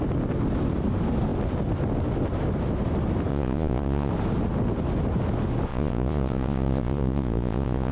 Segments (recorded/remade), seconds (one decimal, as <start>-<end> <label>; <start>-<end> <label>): 0.0-3.3 recorded; 3.3-4.1 remade; 4.1-5.7 recorded; 5.7-7.9 remade

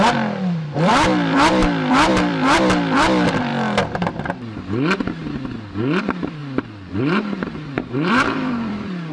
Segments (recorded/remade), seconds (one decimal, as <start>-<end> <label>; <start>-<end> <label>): 0.0-3.5 remade; 3.5-6.0 recorded; 6.0-6.4 remade; 6.4-7.0 recorded; 7.0-9.1 remade

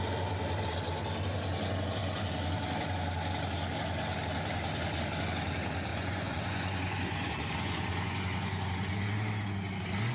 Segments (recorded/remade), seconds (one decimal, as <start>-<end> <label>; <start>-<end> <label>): 0.0-5.9 recorded; 5.9-8.9 remade; 8.9-10.1 recorded

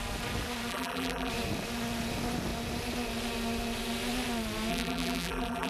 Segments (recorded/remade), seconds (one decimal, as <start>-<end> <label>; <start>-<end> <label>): 0.0-0.7 recorded; 0.7-1.3 remade; 1.3-4.7 recorded; 4.7-5.7 remade

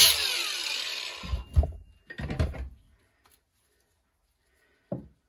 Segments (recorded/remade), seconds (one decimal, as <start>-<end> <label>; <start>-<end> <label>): 0.0-5.3 recorded

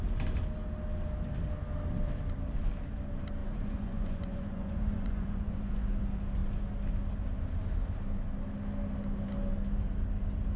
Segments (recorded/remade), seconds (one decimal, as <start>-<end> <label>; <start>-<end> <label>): 0.0-3.4 recorded; 3.4-5.7 remade; 5.7-10.6 recorded

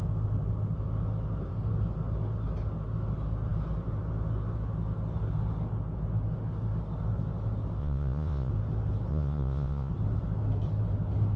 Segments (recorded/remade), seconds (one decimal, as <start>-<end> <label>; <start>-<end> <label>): 0.0-7.8 recorded; 7.8-8.5 remade; 8.5-9.1 recorded; 9.1-9.9 remade; 9.9-11.4 recorded